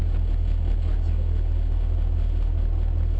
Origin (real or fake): real